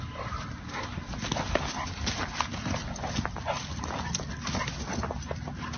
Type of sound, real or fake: real